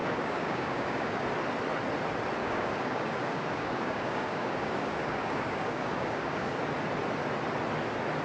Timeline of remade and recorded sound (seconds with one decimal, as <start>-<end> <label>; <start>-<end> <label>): 0.0-1.2 remade; 1.2-2.4 recorded; 2.4-6.6 remade; 6.6-8.2 recorded